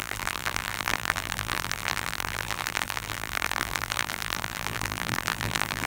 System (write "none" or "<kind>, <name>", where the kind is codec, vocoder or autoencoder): vocoder, BigVGAN v2